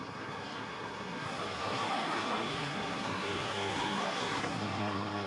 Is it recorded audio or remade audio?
remade